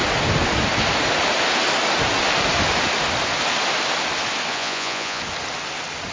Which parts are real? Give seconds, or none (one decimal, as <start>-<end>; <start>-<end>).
0.0-4.5; 5.2-6.1